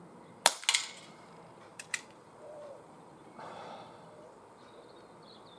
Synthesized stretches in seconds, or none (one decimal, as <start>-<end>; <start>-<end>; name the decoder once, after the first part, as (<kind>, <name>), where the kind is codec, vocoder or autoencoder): 1.7-3.7 (vocoder, BigVGAN v2)